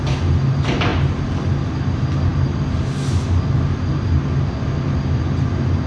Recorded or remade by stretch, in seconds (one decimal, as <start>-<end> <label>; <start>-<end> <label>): 0.0-5.9 recorded